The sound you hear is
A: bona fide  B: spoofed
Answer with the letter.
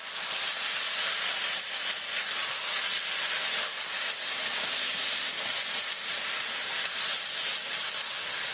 A